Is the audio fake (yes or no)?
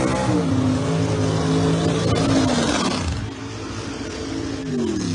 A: no